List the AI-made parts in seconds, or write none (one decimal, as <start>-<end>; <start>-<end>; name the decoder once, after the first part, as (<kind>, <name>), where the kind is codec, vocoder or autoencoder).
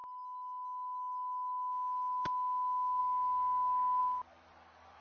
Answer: none